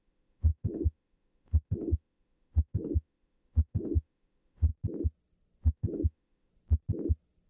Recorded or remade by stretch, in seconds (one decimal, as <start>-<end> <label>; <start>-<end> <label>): 0.0-4.7 remade; 4.7-5.6 recorded; 5.6-6.5 remade; 6.5-7.5 recorded